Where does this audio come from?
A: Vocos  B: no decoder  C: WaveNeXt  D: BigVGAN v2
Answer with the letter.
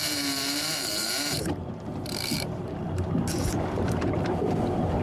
D